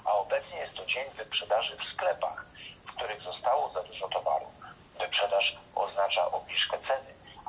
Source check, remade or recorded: recorded